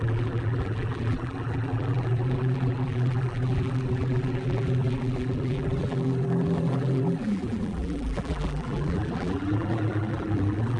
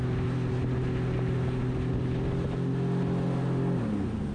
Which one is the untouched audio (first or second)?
second